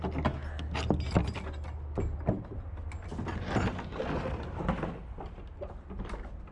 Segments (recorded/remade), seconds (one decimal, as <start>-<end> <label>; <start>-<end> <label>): 0.0-6.5 recorded